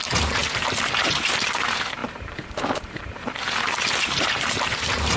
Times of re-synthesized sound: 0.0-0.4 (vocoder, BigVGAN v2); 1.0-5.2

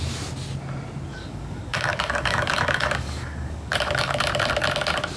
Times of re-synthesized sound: 1.1-4.2 (codec, DAC)

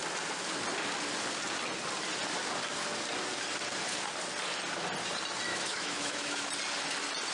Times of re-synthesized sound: 5.5-6.5 (autoencoder, DAC-VAE)

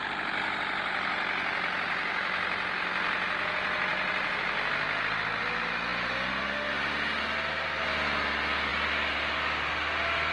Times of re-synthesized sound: none

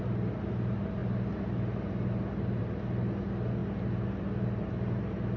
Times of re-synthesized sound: none

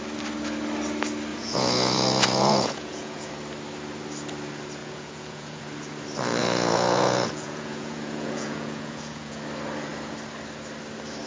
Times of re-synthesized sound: 1.3-3.3 (vocoder, Vocos); 4.8-5.6; 6.4-9.4

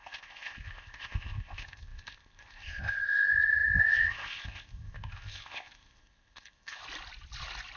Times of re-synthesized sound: 0.0-6.8 (codec, ZipCodec)

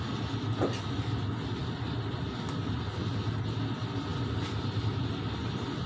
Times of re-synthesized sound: none